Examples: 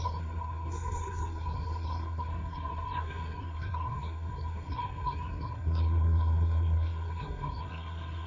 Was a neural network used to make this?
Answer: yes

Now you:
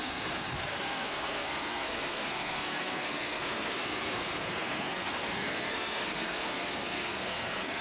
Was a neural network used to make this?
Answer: yes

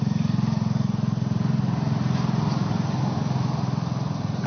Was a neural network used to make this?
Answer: no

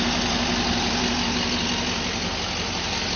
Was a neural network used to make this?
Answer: no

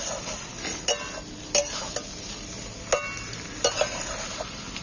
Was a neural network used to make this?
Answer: no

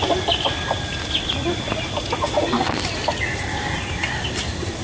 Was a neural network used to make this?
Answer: no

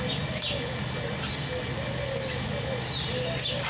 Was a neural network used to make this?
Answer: no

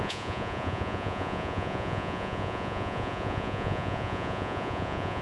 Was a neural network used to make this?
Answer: yes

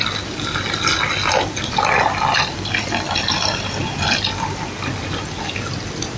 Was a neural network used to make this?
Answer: no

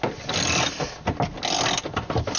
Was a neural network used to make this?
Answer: no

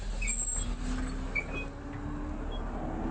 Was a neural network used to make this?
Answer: no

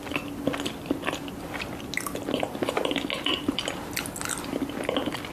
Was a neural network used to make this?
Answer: no